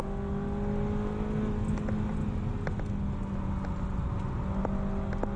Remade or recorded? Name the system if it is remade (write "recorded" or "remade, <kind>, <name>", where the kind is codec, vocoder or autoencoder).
recorded